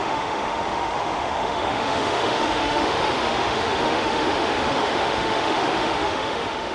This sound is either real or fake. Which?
fake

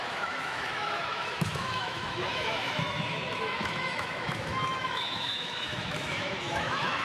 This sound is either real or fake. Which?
fake